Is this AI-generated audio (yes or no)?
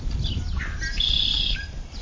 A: no